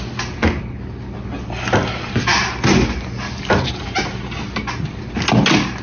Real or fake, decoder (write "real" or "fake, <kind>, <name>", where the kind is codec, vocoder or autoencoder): real